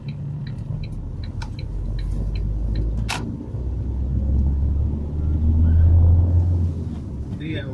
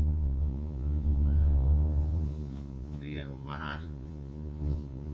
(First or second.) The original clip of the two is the first